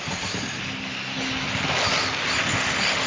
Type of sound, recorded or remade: recorded